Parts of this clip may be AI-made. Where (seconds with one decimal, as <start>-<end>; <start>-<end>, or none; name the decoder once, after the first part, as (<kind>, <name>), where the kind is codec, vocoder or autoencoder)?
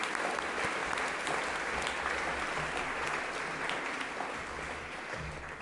none